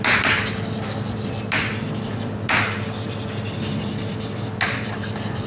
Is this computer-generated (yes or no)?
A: no